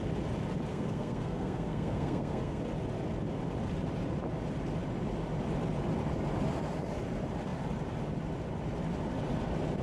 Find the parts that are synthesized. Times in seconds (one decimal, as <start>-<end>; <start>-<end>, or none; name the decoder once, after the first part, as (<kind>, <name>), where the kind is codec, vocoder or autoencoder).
0.7-2.6 (codec, SNAC)